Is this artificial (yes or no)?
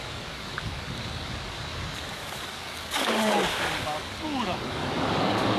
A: yes